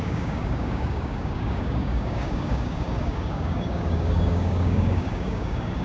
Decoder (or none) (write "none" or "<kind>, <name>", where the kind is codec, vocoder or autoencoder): codec, DAC